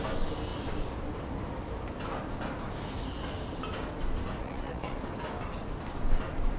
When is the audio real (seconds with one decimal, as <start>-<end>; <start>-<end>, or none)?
0.0-4.4; 5.0-6.6